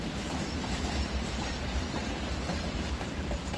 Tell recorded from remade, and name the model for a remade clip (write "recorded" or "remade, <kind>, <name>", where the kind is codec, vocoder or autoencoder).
remade, vocoder, BigVGAN v2